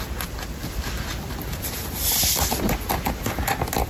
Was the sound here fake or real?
real